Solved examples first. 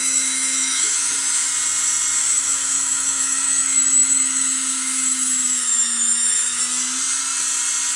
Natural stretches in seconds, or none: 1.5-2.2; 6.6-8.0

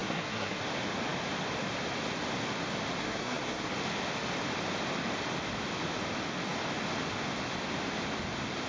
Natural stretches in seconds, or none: 0.6-3.0; 3.7-8.7

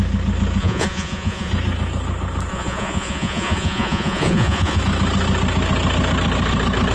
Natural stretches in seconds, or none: 0.0-0.6; 1.5-2.5; 4.8-6.9

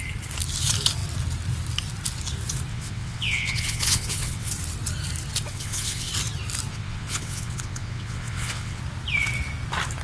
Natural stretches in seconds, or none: 0.0-2.7; 4.5-5.5; 6.1-6.7; 8.8-10.0

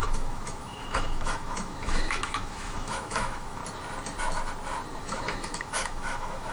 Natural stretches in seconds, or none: 3.6-5.0

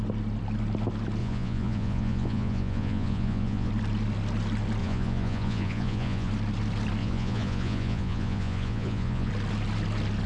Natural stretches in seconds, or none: 0.0-1.2; 3.7-4.8; 6.3-7.0; 9.3-10.3

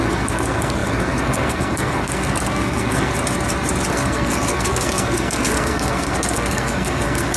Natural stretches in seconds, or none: 3.1-3.9